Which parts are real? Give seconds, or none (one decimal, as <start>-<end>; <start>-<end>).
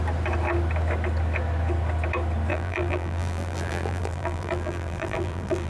0.0-2.5